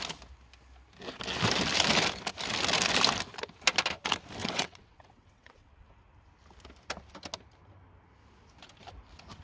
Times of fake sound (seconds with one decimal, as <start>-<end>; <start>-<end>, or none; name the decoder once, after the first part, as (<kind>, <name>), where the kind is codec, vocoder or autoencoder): 4.4-5.9 (vocoder, WaveNeXt)